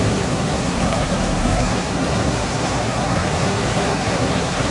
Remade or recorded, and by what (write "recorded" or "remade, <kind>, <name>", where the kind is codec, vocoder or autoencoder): remade, codec, SNAC